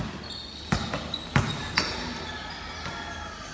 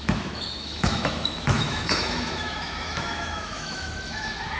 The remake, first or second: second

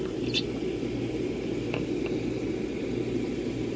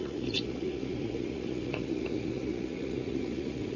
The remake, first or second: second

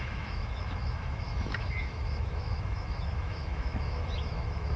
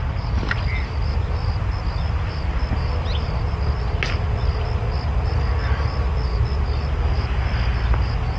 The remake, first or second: first